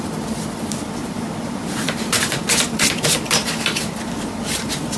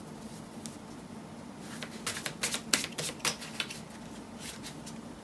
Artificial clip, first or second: first